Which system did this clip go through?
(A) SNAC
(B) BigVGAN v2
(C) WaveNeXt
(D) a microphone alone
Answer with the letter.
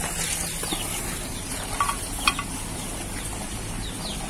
D